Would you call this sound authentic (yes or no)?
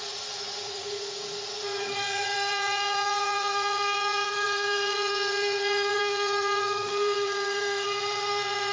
no